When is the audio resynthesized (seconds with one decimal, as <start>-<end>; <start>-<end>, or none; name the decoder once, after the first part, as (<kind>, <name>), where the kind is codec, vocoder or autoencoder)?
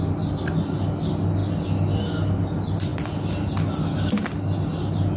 none